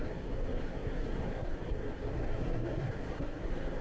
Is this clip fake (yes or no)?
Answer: yes